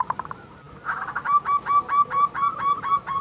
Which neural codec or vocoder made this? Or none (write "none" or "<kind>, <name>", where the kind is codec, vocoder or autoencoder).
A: none